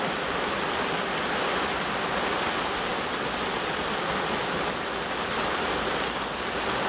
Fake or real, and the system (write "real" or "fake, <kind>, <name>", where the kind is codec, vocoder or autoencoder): real